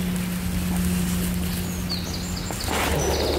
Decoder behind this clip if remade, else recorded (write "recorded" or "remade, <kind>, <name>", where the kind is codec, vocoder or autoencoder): recorded